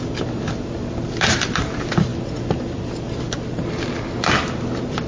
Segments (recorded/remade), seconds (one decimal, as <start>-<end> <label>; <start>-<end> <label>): 0.0-5.1 recorded